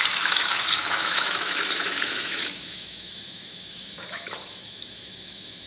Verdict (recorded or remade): remade